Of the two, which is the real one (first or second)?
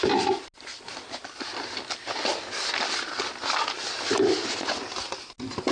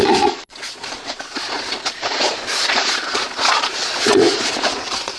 first